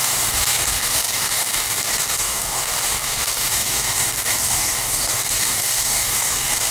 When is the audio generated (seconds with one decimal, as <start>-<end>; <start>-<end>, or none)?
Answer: 0.0-6.7